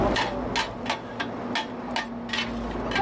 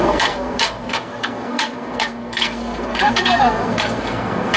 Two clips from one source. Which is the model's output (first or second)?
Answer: second